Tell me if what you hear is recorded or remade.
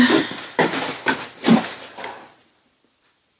recorded